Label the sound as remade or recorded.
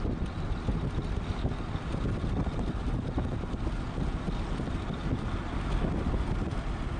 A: recorded